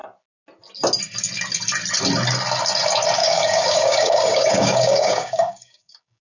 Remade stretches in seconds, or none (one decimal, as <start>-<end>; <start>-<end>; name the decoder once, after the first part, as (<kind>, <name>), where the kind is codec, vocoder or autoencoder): 3.2-6.2 (codec, DAC)